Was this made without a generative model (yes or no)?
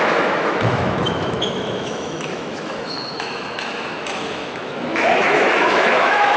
no